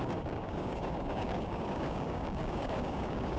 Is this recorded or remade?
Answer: remade